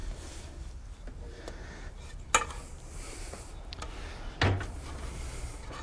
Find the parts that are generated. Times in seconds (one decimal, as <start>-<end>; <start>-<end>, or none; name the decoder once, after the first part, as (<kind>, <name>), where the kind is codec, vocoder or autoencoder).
none